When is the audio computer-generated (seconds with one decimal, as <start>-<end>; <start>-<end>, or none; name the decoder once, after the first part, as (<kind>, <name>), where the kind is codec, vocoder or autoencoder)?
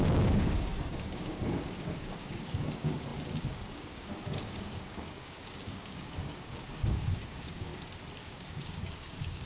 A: 0.0-7.7 (codec, DAC); 8.2-9.5